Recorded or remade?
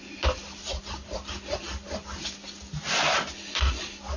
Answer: recorded